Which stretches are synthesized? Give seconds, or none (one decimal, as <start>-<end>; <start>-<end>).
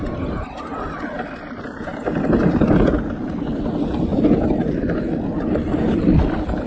0.0-1.9; 3.1-6.7